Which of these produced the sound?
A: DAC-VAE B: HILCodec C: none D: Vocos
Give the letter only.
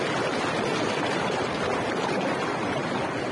C